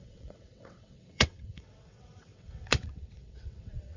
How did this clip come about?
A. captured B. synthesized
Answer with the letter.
B